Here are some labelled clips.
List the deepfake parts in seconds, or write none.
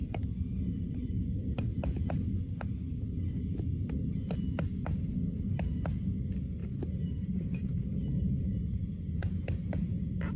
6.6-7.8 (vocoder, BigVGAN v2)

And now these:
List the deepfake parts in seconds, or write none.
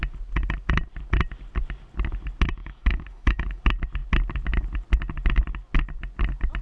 2.6-3.6 (autoencoder, DAC-VAE)